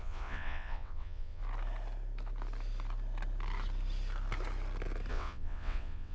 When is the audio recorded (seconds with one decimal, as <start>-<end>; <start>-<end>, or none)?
1.4-5.1